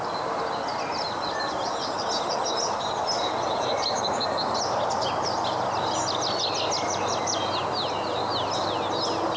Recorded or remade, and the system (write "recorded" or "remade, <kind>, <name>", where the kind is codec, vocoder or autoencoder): recorded